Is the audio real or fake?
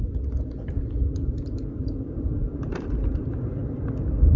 real